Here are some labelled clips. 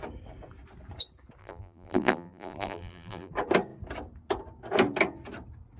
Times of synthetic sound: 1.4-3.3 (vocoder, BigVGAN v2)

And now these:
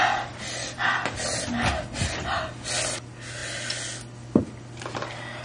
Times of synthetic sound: none